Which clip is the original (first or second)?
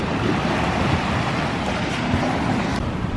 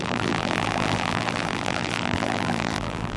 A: first